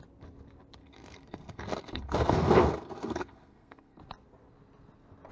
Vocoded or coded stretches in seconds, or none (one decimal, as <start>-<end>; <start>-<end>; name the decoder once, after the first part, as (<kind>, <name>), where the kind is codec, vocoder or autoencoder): 0.8-4.0 (codec, SNAC)